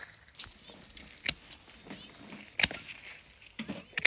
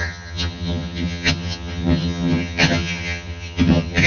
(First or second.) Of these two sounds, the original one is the first